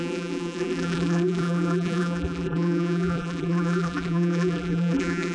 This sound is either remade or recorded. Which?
remade